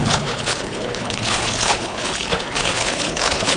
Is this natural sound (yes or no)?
no